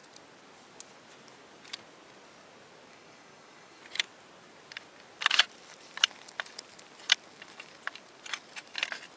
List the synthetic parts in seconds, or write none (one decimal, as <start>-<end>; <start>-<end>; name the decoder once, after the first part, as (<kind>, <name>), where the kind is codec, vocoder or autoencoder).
2.9-3.8 (codec, DAC)